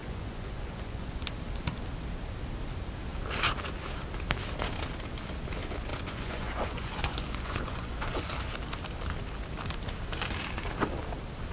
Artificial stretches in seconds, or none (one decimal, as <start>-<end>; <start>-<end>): 0.0-1.2; 5.9-8.2

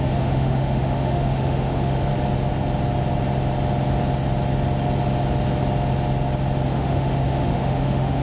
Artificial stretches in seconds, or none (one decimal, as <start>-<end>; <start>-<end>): 0.0-2.1; 6.7-8.2

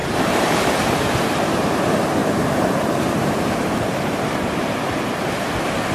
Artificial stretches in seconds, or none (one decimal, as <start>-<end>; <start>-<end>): 0.0-1.7; 2.2-4.6